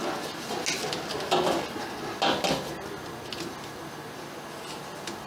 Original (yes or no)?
yes